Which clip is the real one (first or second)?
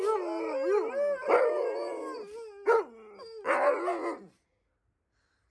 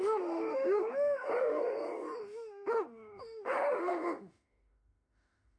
first